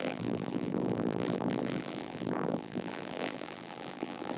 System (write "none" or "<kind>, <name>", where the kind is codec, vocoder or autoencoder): vocoder, BigVGAN v2